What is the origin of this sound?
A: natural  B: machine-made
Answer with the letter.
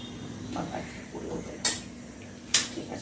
A